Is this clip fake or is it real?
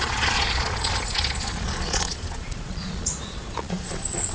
fake